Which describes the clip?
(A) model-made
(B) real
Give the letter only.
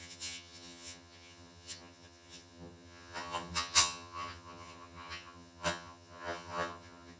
A